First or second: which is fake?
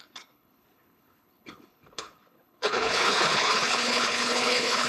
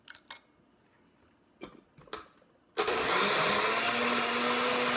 first